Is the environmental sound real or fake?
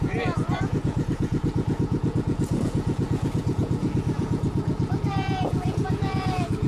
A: fake